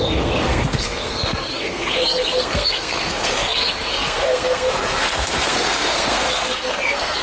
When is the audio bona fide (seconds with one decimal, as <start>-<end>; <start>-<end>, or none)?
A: none